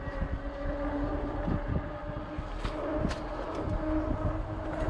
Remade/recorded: recorded